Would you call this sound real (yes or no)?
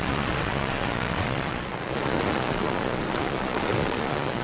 no